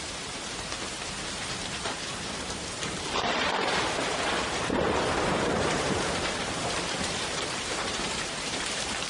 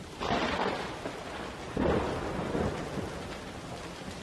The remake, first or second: first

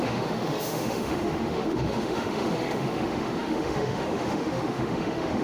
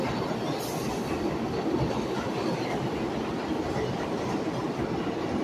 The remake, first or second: first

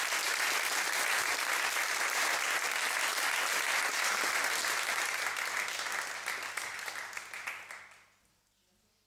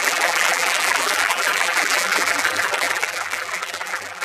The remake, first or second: second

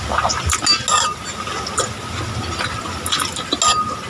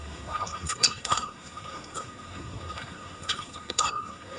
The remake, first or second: second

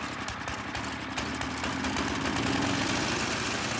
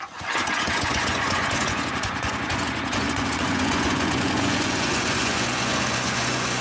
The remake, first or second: second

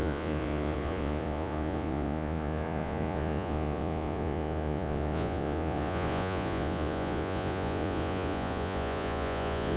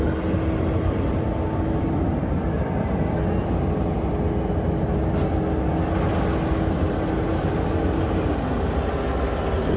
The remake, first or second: first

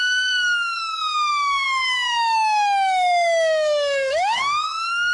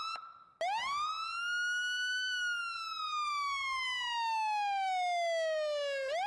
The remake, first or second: first